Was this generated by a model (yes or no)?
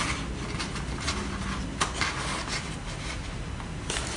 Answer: no